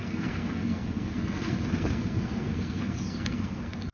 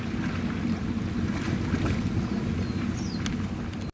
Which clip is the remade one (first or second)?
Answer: first